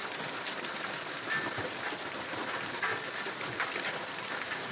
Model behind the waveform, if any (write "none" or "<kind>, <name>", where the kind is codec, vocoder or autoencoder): none